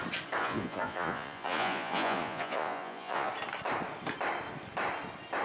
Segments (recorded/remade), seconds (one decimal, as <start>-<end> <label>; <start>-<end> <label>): 0.0-0.4 recorded; 0.4-3.3 remade; 3.3-5.4 recorded